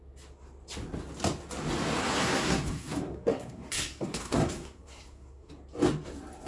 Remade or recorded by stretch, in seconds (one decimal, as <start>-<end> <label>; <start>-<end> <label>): 0.0-2.0 recorded; 2.0-5.5 remade; 5.5-6.5 recorded